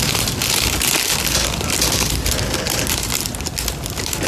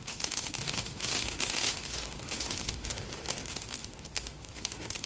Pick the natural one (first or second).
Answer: first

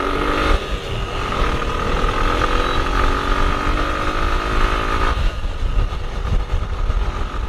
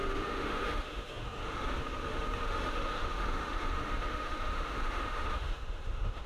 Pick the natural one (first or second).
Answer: first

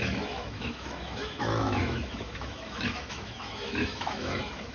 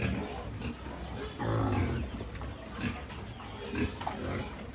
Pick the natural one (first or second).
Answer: second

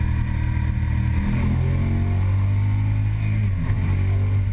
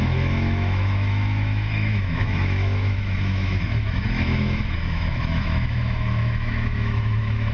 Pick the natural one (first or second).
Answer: first